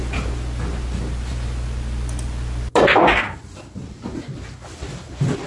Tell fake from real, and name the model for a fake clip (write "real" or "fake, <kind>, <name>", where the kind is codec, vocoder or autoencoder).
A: real